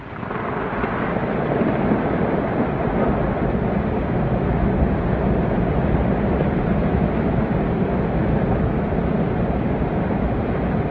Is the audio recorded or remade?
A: recorded